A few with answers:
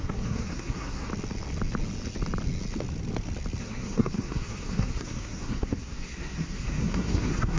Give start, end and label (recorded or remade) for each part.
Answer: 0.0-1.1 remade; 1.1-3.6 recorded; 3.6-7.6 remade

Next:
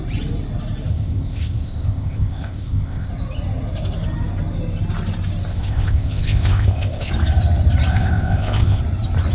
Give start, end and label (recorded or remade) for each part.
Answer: 0.0-0.9 recorded; 0.9-3.1 remade; 3.1-5.5 recorded; 5.5-7.1 remade; 7.1-7.9 recorded; 7.9-8.8 remade; 8.8-9.3 recorded

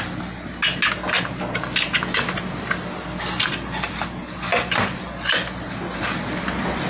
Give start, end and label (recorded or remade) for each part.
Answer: 0.0-6.9 recorded